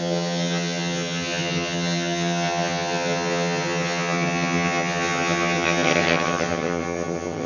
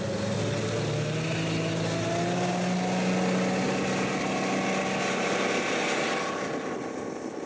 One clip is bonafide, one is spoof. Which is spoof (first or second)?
first